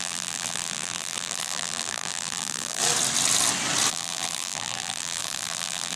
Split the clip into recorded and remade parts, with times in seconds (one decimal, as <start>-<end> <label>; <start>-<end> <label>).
0.0-2.8 remade; 2.8-3.9 recorded; 3.9-6.0 remade